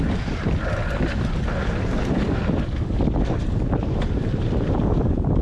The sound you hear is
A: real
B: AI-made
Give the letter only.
B